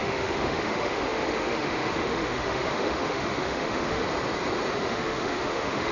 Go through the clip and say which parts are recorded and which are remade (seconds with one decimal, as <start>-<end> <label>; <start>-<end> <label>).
0.0-4.0 remade; 4.0-4.8 recorded; 4.8-5.9 remade